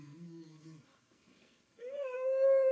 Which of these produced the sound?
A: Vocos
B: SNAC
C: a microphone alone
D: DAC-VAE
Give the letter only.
B